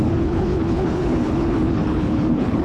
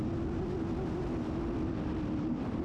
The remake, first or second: first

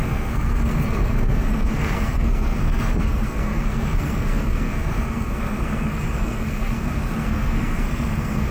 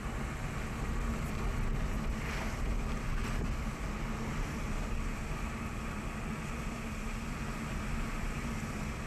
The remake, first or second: first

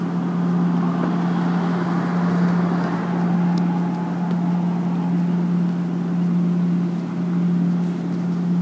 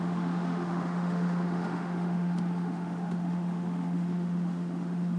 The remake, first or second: second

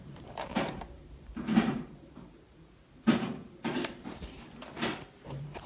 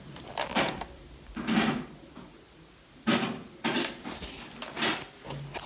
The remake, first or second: first